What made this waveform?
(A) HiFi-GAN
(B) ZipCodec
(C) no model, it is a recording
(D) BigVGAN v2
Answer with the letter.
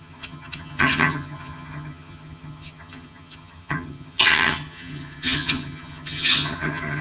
A